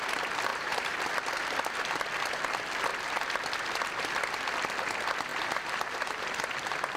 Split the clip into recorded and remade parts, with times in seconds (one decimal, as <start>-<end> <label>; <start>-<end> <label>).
0.0-0.5 recorded; 0.5-1.0 remade; 1.0-5.3 recorded; 5.3-6.5 remade; 6.5-7.0 recorded

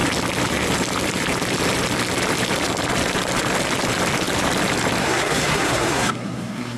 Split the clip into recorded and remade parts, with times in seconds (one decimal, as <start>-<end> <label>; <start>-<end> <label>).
0.0-5.0 recorded; 5.0-6.8 remade

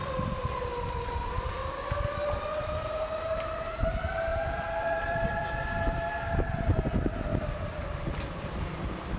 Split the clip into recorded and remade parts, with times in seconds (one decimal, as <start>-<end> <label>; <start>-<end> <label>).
0.0-0.6 remade; 0.6-4.3 recorded; 4.3-5.4 remade; 5.4-7.3 recorded; 7.3-8.5 remade; 8.5-9.2 recorded

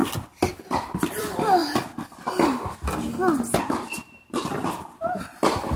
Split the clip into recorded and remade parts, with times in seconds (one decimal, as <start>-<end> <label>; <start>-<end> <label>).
0.0-1.0 recorded; 1.0-1.6 remade; 1.6-3.6 recorded; 3.6-5.8 remade